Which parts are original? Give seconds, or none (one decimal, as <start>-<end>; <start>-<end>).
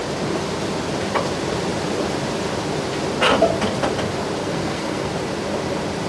0.0-4.4; 5.1-6.1